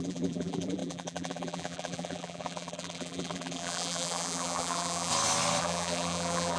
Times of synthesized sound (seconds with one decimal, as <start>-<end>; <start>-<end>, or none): 0.0-5.1; 5.6-6.6